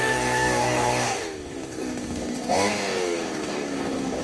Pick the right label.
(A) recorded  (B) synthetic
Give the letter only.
B